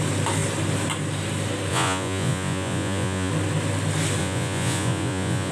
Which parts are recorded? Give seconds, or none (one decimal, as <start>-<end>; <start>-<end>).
0.0-1.7; 3.3-4.2